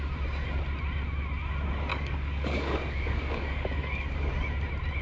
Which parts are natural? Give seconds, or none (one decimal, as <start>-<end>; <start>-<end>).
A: 0.0-1.9; 4.3-5.0